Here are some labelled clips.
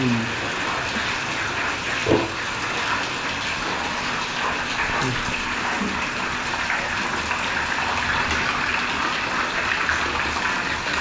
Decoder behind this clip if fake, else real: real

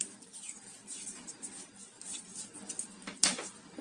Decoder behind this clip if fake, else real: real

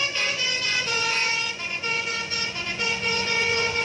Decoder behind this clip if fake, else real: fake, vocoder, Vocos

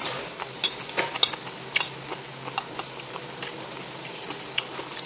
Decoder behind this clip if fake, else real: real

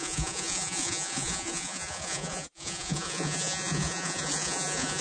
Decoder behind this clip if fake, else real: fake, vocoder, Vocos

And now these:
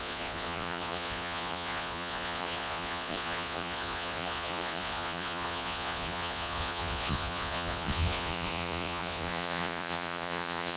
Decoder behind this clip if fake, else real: fake, vocoder, Vocos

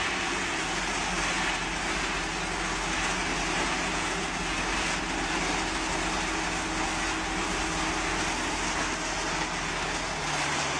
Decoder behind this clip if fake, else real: real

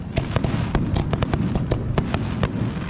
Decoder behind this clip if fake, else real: real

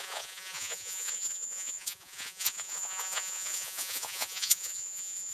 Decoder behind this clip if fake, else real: fake, vocoder, Vocos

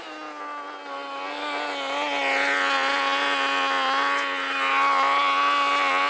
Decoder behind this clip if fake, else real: real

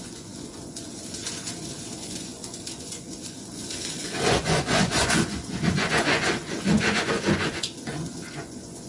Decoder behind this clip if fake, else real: fake, vocoder, Vocos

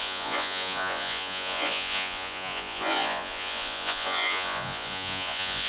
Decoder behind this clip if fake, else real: fake, vocoder, Vocos